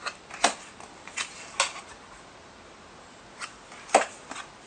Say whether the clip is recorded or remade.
recorded